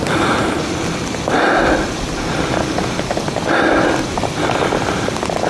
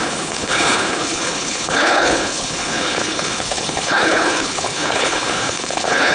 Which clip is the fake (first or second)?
second